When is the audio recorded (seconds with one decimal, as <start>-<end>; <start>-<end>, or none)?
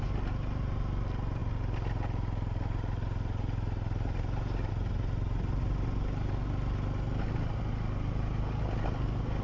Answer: 0.0-9.4